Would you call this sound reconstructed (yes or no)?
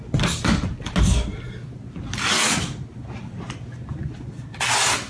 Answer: no